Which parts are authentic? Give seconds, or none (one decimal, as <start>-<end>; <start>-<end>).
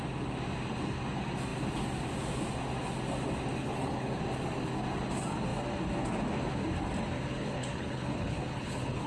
0.0-3.6; 4.2-7.3